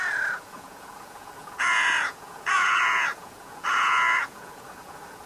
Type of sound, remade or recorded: remade